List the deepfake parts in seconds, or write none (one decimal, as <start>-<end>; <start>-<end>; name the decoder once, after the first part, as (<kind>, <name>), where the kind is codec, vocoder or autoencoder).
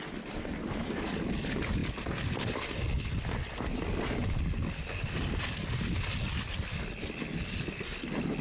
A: none